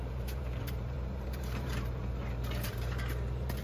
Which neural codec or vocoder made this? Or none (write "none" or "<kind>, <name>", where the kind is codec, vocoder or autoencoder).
vocoder, BigVGAN v2